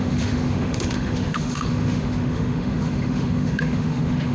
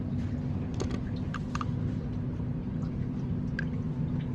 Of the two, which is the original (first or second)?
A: second